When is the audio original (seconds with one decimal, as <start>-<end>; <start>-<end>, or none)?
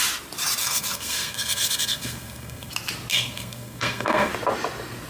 0.0-0.6; 2.7-3.1; 4.3-5.1